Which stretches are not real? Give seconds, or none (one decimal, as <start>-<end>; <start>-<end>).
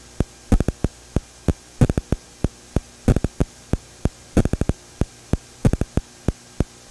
3.4-6.0